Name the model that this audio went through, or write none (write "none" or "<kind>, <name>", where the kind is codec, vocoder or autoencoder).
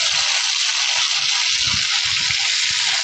none